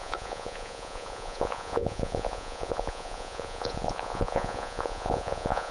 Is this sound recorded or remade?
remade